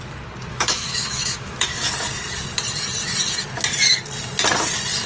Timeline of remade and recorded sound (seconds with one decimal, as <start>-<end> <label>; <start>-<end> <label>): 0.0-0.5 recorded; 0.5-1.9 remade; 1.9-5.1 recorded